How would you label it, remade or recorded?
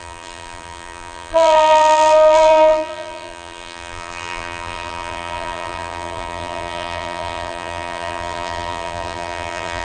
remade